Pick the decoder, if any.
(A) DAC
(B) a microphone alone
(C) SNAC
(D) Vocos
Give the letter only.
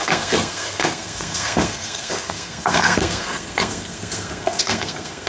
C